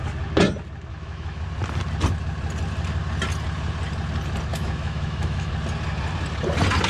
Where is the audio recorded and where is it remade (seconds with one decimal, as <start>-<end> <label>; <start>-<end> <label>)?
0.0-0.9 recorded; 0.9-1.4 remade; 1.4-4.5 recorded; 4.5-5.5 remade; 5.5-6.9 recorded

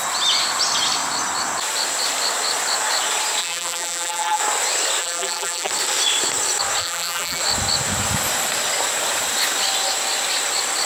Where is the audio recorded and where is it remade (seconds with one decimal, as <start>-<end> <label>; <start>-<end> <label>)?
0.0-3.4 recorded; 3.4-4.4 remade; 4.4-5.0 recorded; 5.0-5.7 remade; 5.7-6.8 recorded; 6.8-7.4 remade; 7.4-10.9 recorded

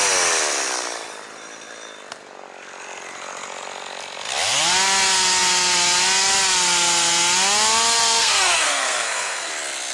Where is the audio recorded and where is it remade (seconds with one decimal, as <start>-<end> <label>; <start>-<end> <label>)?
0.0-8.0 recorded; 8.0-9.5 remade; 9.5-9.9 recorded

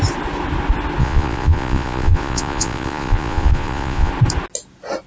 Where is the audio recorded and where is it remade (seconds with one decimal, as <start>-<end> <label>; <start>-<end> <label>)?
0.0-1.0 recorded; 1.0-4.1 remade; 4.1-5.1 recorded

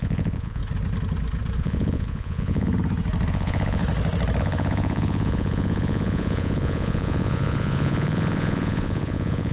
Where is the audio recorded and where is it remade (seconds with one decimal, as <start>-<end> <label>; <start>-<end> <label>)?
0.0-0.6 remade; 0.6-1.6 recorded; 1.6-2.7 remade; 2.7-3.3 recorded; 3.3-3.8 remade; 3.8-4.4 recorded; 4.4-9.5 remade

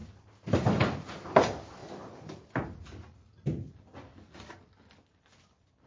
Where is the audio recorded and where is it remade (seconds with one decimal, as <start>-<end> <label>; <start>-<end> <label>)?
0.0-0.7 recorded; 0.7-1.8 remade; 1.8-5.3 recorded; 5.3-5.9 remade

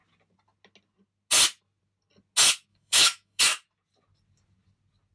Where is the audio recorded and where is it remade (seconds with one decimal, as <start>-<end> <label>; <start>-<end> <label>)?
0.0-2.7 recorded; 2.7-3.4 remade; 3.4-5.1 recorded

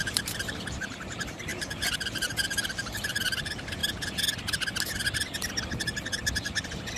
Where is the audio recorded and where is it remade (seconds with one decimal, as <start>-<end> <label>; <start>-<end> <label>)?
0.0-3.8 remade; 3.8-5.6 recorded; 5.6-7.0 remade